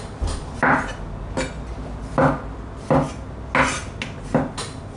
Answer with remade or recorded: recorded